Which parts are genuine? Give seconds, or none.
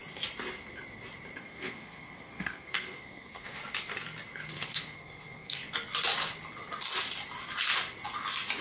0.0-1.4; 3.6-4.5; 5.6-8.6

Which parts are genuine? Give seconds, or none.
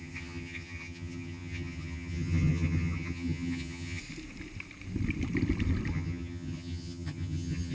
4.0-5.9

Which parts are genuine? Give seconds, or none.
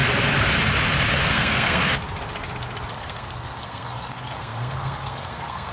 0.0-1.3; 1.8-2.9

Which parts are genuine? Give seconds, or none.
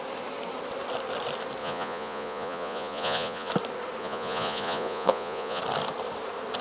0.0-1.6; 3.5-4.0; 5.6-6.6